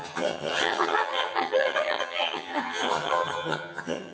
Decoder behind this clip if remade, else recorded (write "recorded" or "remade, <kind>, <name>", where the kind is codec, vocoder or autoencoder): remade, vocoder, HiFi-GAN